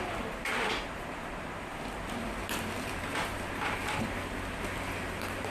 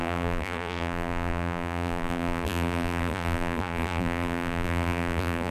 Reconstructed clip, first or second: second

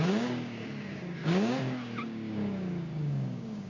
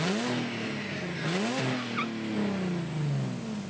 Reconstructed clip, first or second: first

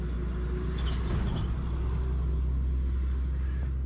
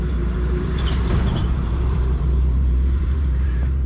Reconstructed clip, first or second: second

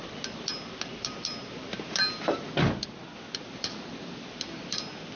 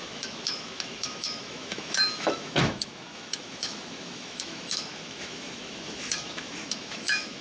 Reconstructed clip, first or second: second